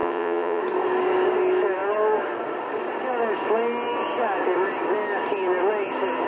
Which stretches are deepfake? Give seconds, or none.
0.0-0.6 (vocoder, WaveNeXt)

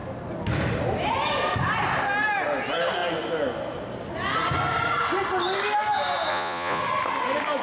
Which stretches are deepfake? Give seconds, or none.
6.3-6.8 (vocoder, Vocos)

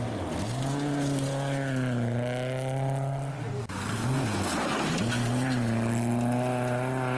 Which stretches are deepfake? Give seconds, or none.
none